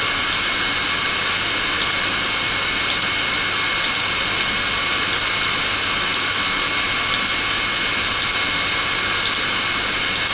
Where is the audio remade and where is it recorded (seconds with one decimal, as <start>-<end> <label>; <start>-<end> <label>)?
0.0-10.3 recorded